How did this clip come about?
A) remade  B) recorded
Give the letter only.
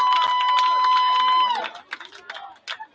B